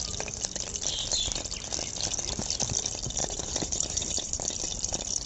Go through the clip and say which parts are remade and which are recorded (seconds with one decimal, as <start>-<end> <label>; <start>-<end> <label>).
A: 0.0-3.2 recorded; 3.2-4.5 remade; 4.5-5.3 recorded